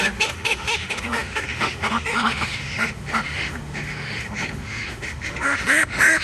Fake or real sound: fake